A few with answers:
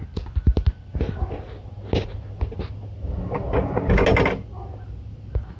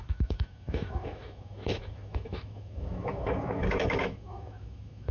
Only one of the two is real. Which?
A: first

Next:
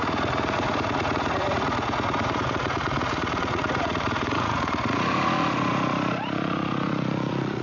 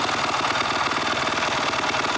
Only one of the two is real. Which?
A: second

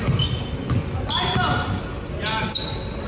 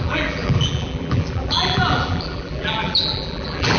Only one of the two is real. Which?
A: first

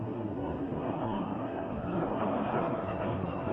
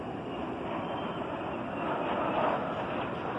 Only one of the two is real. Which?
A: second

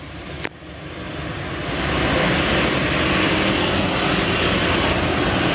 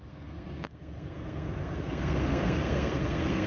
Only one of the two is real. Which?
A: first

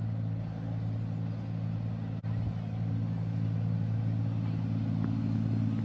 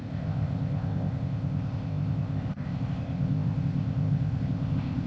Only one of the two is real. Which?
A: first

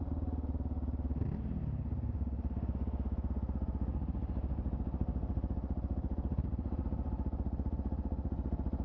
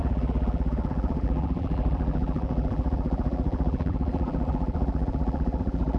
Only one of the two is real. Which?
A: first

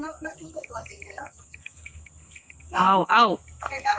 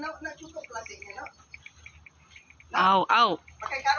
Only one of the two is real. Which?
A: second